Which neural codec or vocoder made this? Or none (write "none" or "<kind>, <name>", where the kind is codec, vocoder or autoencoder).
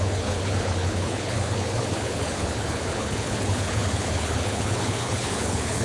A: codec, HILCodec